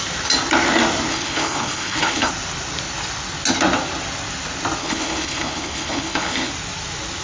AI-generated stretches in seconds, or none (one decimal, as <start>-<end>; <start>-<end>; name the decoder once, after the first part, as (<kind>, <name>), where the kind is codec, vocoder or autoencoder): 1.1-2.3 (codec, HILCodec); 4.8-6.5